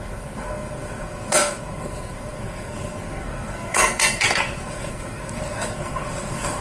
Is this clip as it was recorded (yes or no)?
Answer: no